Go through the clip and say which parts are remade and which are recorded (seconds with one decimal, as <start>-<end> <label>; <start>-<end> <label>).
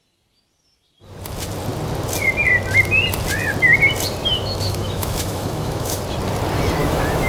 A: 0.0-4.2 recorded; 4.2-6.0 remade; 6.0-6.8 recorded; 6.8-7.3 remade